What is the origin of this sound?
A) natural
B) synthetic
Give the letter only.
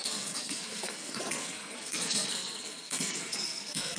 B